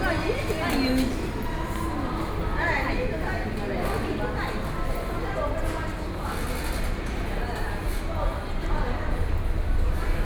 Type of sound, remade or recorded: recorded